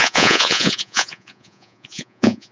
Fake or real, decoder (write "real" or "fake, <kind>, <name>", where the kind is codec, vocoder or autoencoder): fake, vocoder, Vocos